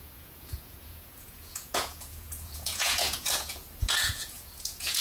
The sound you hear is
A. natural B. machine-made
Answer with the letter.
B